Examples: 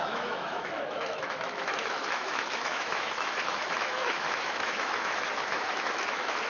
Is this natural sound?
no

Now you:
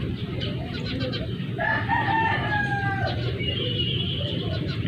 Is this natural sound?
no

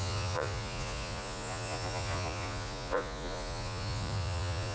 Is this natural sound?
no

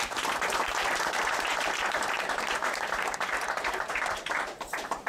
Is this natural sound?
no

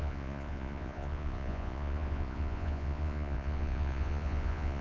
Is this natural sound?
no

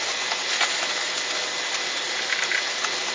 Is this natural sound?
yes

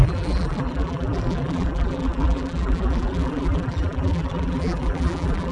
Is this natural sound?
no